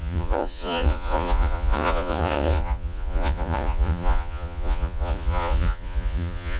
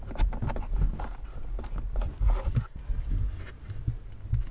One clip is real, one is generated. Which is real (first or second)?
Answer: second